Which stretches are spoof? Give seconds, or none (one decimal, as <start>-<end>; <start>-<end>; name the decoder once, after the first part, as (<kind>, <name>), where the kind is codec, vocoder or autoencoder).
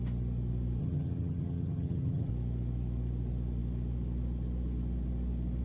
0.8-2.3 (vocoder, HiFi-GAN)